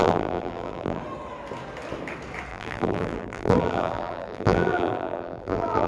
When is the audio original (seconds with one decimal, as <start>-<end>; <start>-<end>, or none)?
1.0-2.5